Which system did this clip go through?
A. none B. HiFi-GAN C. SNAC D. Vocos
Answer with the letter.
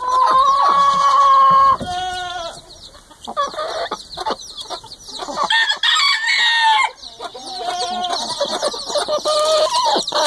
A